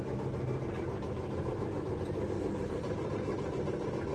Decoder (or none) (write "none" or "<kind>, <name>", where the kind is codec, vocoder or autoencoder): none